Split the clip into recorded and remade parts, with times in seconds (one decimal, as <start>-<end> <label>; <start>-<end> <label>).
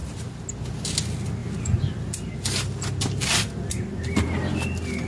0.0-5.1 recorded